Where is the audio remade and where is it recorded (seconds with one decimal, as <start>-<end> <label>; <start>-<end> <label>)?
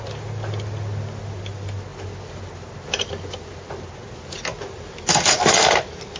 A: 0.0-6.2 recorded